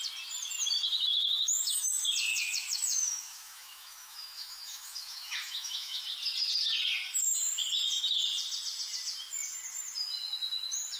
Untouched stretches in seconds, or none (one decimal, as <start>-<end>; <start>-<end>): 0.0-1.1; 1.9-2.3; 6.0-11.0